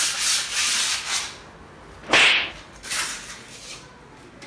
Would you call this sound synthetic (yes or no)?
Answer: no